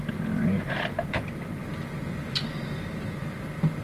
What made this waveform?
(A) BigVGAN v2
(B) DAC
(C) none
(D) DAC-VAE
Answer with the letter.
C